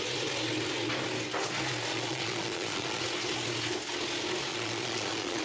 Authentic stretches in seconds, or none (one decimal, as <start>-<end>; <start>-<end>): 0.0-1.9; 3.0-4.5